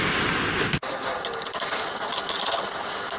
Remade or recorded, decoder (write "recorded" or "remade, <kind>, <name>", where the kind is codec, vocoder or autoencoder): recorded